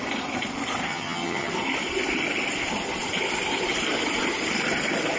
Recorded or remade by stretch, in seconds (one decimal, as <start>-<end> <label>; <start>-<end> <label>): 0.0-0.9 recorded; 0.9-1.5 remade; 1.5-5.2 recorded